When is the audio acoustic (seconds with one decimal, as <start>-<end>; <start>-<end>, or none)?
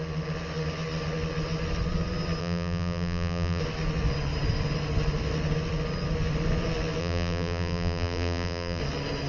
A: 0.0-2.4; 3.6-7.0; 8.8-9.3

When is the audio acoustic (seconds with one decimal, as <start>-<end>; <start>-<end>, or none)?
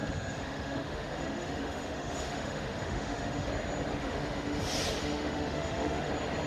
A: 3.5-4.0; 4.6-5.0; 6.1-6.5